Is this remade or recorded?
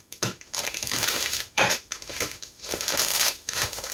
remade